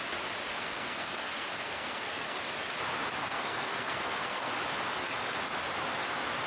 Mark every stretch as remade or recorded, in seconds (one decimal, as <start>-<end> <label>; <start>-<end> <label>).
0.0-0.5 recorded; 0.5-2.4 remade; 2.4-3.2 recorded; 3.2-4.5 remade; 4.5-6.5 recorded